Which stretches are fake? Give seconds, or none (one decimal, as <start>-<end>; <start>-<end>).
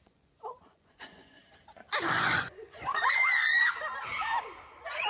0.0-1.4; 2.0-3.7